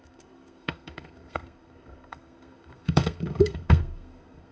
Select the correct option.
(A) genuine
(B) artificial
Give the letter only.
B